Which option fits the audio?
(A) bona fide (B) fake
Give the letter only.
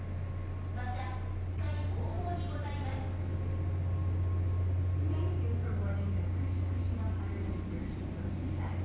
A